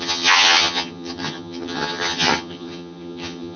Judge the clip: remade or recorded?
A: remade